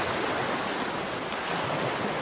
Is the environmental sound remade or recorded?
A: recorded